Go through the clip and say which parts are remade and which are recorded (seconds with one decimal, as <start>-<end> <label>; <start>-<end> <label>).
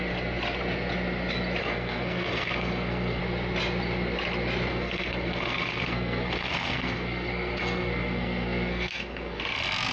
0.0-1.6 recorded; 1.6-3.2 remade; 3.2-4.7 recorded; 4.7-9.4 remade; 9.4-9.9 recorded